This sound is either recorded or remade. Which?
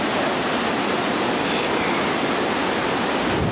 recorded